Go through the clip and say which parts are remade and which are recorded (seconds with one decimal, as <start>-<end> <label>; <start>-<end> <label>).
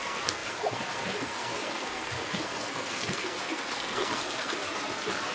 0.0-5.3 remade